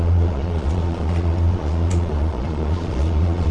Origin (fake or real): fake